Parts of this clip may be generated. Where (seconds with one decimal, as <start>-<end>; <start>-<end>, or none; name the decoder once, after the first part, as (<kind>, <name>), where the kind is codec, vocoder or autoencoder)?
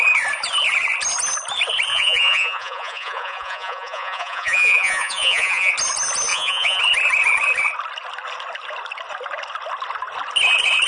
1.9-5.7 (vocoder, Vocos); 6.3-6.8